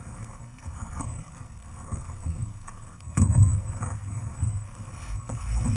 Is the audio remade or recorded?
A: remade